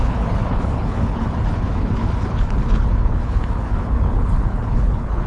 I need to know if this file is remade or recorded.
remade